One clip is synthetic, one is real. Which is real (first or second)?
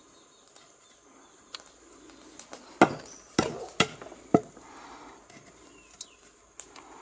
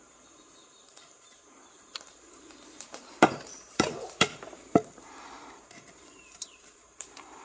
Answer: first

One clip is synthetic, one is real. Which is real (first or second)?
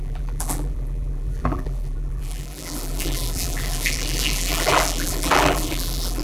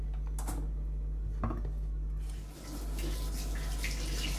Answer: second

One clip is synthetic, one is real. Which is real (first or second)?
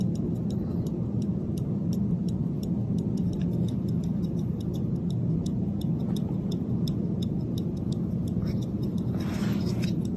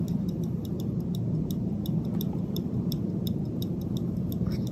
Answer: first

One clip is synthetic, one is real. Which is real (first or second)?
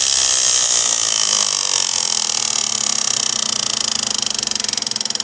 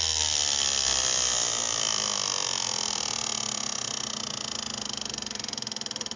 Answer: second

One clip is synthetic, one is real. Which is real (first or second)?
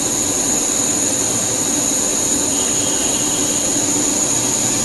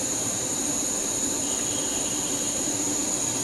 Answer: first